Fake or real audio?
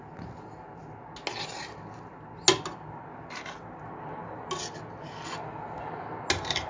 real